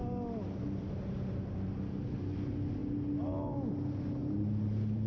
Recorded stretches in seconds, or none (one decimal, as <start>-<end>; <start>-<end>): 0.0-4.2